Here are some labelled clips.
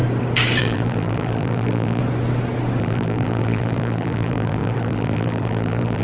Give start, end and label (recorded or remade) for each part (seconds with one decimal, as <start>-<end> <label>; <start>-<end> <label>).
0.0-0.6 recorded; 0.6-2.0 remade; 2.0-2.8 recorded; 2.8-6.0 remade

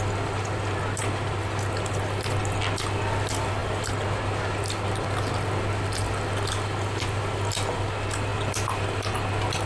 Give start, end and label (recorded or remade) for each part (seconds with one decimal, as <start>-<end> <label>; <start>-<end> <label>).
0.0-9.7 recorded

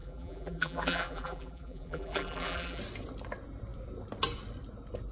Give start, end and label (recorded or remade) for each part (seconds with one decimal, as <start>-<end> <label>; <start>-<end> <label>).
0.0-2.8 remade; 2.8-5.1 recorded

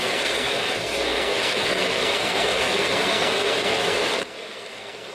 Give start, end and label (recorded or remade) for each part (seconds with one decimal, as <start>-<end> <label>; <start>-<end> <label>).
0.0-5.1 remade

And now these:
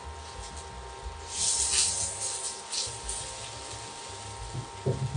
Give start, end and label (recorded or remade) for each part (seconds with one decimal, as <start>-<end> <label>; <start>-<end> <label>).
0.0-5.2 recorded

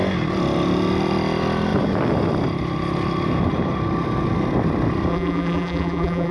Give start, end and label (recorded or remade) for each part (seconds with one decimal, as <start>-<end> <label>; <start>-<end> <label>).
0.0-5.1 recorded; 5.1-6.3 remade

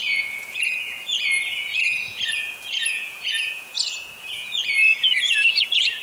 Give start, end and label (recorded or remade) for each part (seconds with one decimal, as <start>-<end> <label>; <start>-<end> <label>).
0.0-6.0 remade

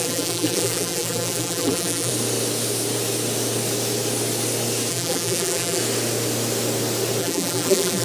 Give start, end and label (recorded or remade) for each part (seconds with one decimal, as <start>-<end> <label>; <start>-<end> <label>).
0.0-2.1 remade; 2.1-4.9 recorded; 4.9-5.8 remade; 5.8-7.2 recorded; 7.2-8.0 remade